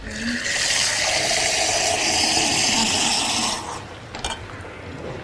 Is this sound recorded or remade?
recorded